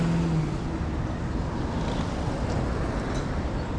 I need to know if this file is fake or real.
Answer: real